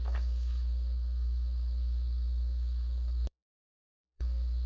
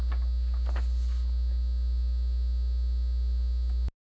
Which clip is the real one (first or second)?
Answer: second